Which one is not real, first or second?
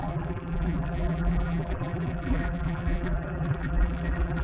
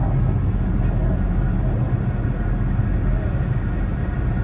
first